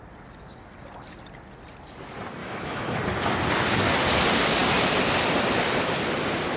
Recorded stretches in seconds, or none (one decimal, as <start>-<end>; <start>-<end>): 0.0-2.4; 3.0-6.6